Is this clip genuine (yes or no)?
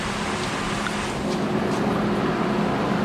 yes